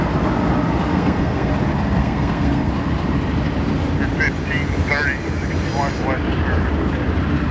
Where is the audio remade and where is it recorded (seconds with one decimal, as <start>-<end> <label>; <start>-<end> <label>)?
0.0-0.9 recorded; 0.9-1.5 remade; 1.5-2.0 recorded; 2.0-2.7 remade; 2.7-7.5 recorded